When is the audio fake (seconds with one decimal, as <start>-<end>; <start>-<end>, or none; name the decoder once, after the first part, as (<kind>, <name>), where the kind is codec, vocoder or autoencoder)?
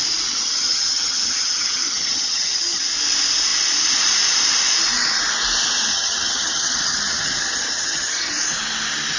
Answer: 0.4-2.8 (vocoder, HiFi-GAN); 5.9-8.3